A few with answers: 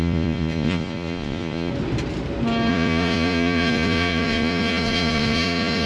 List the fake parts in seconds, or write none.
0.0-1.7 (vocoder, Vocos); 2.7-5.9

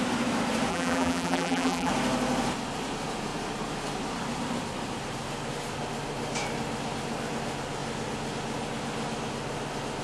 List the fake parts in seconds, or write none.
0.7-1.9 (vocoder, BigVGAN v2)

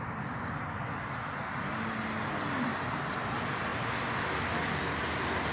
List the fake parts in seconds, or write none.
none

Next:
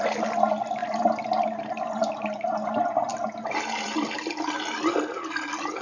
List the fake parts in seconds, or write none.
none